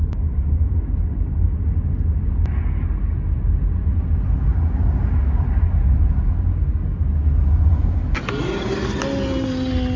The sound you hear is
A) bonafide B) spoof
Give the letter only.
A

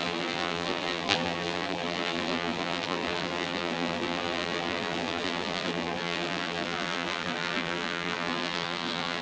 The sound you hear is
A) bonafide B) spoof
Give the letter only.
B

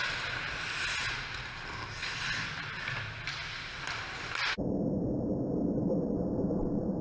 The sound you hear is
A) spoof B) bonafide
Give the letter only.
B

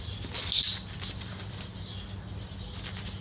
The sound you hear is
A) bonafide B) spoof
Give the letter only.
A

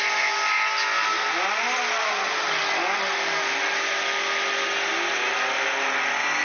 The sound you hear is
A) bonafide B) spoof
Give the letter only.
A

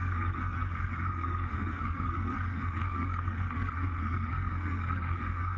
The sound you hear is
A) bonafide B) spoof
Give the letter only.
B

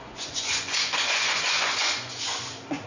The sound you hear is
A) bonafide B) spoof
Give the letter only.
B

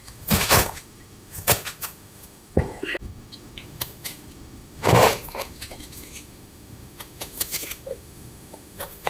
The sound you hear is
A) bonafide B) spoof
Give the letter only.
B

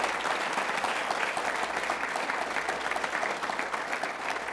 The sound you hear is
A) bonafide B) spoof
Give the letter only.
A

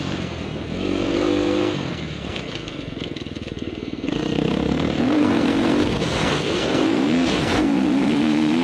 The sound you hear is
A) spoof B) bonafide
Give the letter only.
A